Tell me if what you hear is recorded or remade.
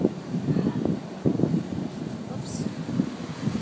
recorded